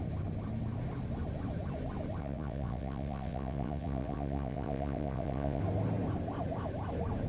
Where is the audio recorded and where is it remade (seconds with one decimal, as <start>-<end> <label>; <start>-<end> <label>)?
0.0-2.2 recorded; 2.2-5.6 remade; 5.6-7.3 recorded